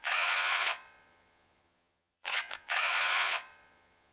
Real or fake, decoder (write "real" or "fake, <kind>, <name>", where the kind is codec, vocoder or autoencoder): fake, vocoder, Vocos